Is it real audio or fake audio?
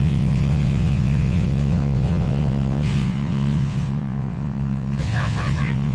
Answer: fake